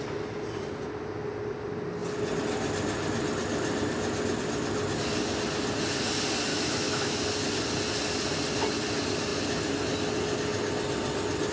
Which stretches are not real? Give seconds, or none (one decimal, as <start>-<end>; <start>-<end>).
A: 6.5-7.2